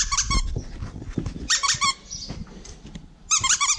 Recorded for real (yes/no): yes